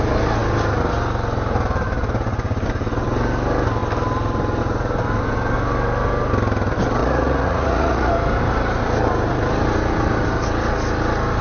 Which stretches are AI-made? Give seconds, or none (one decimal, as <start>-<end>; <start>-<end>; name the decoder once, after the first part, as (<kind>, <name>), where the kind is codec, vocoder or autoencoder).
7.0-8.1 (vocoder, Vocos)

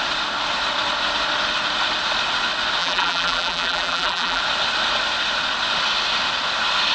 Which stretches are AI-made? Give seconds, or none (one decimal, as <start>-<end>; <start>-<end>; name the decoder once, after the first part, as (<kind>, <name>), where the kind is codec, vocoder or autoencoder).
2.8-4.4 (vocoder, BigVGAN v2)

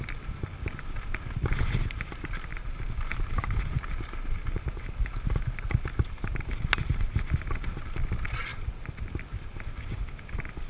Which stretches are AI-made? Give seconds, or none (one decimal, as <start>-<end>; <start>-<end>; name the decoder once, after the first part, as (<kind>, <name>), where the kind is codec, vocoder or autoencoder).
2.5-5.3 (vocoder, BigVGAN v2); 6.9-7.7; 8.5-9.2

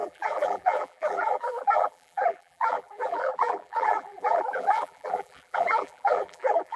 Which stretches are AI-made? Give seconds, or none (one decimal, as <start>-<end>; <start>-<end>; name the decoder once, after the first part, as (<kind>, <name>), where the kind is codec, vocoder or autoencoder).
0.0-6.8 (vocoder, BigVGAN v2)

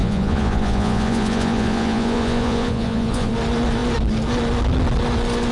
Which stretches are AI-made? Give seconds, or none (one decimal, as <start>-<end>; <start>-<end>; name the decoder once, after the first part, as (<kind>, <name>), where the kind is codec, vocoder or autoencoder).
0.0-3.3 (vocoder, Vocos)

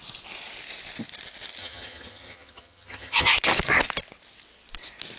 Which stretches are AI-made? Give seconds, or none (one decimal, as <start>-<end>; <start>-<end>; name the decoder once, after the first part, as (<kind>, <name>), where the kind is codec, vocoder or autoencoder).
1.6-3.3 (vocoder, HiFi-GAN)

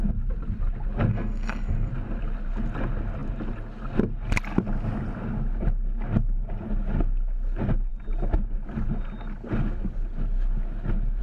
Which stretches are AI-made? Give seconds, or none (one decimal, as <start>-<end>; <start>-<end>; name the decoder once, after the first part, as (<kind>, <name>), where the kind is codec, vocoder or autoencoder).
1.1-1.9 (codec, SNAC)

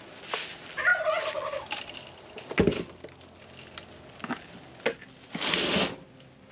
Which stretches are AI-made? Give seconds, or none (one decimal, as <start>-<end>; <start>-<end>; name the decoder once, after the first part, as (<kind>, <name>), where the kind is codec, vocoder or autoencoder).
none